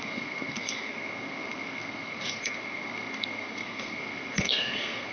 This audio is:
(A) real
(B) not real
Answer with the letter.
B